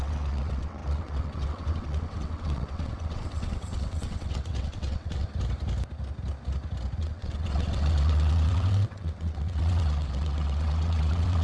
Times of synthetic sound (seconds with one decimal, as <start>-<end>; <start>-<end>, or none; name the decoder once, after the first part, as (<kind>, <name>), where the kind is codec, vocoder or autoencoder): 0.0-5.3 (vocoder, WaveNeXt); 7.0-11.4